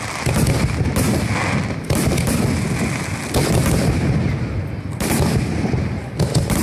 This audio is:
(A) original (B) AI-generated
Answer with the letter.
A